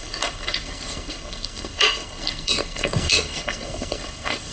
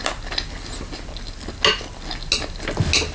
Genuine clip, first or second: second